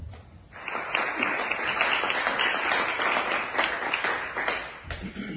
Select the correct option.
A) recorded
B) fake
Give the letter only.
A